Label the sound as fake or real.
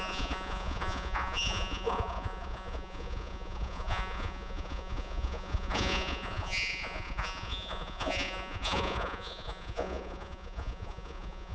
fake